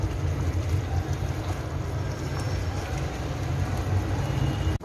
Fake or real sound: real